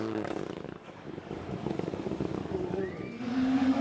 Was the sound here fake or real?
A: fake